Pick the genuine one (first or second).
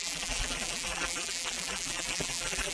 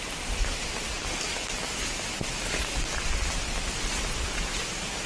second